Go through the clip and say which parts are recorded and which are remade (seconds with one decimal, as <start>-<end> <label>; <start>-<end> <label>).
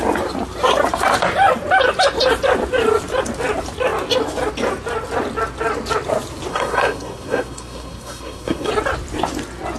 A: 0.0-6.5 recorded; 6.5-8.7 remade; 8.7-9.8 recorded